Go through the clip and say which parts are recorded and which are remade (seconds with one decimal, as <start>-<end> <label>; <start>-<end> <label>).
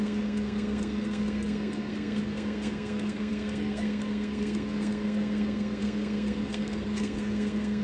0.0-7.8 remade